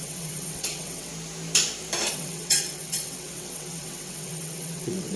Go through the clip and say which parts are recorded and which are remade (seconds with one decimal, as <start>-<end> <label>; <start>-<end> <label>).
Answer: 0.0-1.1 remade; 1.1-2.1 recorded; 2.1-5.2 remade